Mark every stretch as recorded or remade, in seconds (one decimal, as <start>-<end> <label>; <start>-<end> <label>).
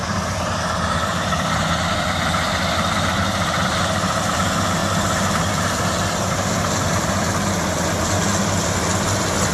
0.0-9.5 recorded